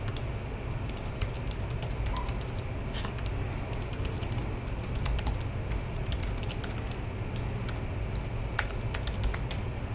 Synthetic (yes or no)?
no